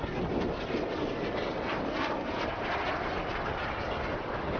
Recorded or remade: recorded